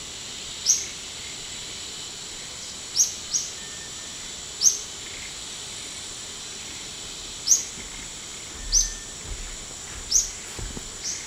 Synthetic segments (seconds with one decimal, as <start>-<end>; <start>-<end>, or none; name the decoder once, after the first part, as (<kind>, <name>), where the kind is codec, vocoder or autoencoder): none